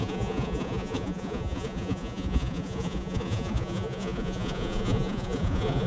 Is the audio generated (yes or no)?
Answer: yes